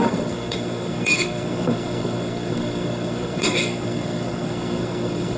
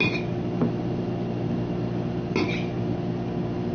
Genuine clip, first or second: second